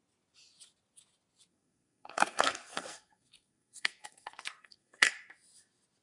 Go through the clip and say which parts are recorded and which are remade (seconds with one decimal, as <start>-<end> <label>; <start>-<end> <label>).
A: 0.0-1.5 recorded; 1.5-5.1 remade; 5.1-6.0 recorded